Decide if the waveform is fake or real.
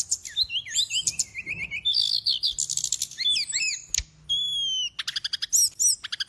real